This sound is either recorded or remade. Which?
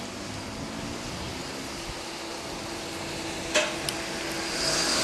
recorded